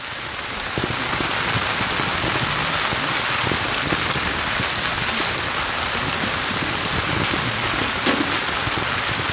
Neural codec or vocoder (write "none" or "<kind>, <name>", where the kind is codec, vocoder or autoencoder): none